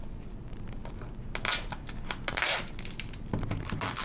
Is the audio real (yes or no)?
yes